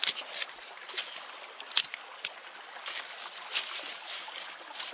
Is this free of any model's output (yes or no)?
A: yes